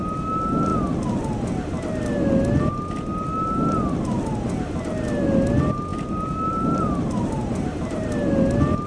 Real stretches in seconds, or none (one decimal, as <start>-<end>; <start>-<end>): 0.0-5.9; 8.1-8.9